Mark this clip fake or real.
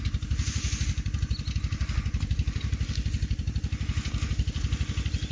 real